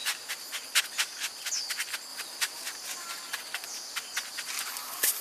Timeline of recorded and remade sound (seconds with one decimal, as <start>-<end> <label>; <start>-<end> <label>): 0.0-5.2 recorded